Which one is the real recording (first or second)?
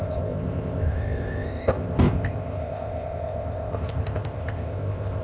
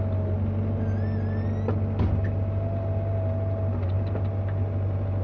second